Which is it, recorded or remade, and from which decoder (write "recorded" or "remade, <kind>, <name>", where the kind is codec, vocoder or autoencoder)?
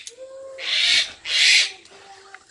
recorded